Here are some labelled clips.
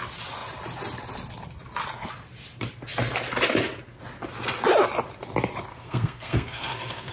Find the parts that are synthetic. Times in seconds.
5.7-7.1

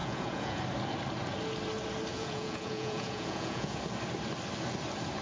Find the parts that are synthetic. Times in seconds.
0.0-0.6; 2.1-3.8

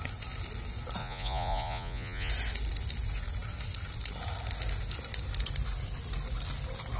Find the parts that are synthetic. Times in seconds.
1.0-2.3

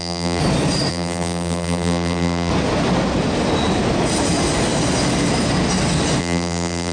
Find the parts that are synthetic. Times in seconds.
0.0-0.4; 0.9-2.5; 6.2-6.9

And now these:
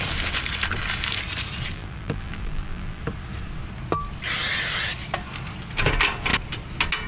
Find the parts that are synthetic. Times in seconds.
1.7-3.0

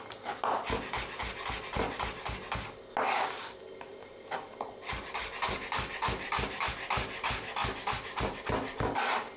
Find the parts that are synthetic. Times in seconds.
4.0-6.7

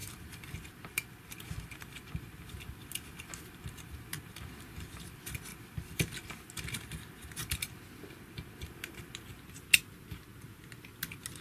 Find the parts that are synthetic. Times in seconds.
none